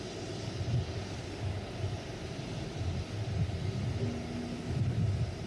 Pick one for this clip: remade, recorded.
recorded